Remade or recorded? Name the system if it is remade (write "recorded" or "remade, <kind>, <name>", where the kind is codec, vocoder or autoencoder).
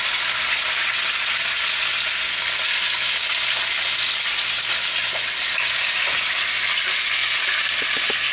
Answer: recorded